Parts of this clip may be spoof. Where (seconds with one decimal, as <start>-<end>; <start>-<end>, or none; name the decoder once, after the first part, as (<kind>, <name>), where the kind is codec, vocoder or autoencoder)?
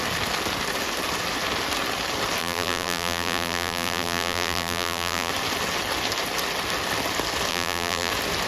2.4-5.3 (vocoder, BigVGAN v2); 7.5-8.1